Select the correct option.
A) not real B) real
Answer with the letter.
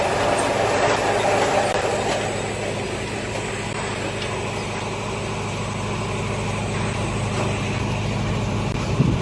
B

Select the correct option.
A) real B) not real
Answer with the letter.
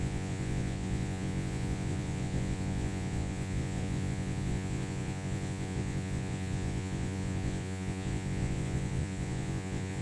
B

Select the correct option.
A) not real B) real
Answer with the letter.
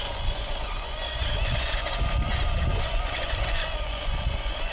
A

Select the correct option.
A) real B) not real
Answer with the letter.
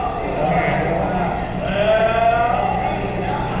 A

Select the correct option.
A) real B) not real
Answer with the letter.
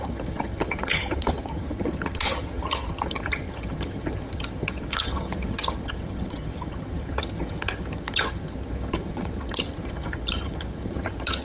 B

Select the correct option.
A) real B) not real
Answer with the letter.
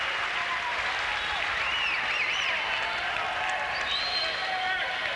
B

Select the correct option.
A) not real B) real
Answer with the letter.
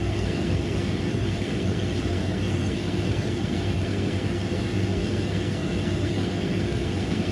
A